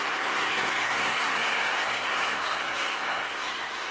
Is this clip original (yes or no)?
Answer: no